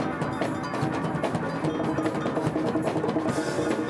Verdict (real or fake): real